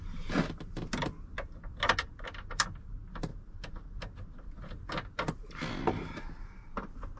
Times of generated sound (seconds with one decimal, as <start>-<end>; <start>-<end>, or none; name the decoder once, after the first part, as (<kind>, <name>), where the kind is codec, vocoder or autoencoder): none